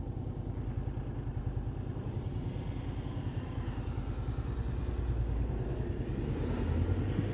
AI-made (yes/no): no